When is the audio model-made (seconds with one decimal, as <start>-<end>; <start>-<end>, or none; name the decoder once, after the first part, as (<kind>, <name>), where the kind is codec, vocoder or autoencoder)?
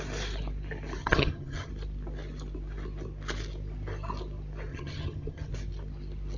1.0-1.7 (vocoder, HiFi-GAN); 4.7-5.5